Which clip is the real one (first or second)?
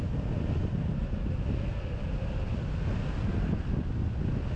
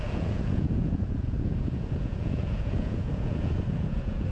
first